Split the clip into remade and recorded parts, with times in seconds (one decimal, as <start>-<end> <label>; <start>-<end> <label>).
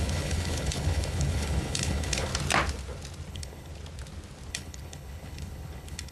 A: 0.0-2.3 remade; 2.3-3.3 recorded; 3.3-3.7 remade; 3.7-4.5 recorded; 4.5-6.1 remade